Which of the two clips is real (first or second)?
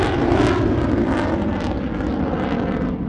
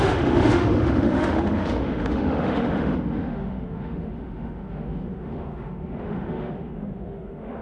first